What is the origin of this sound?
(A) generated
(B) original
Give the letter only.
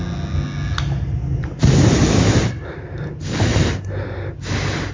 B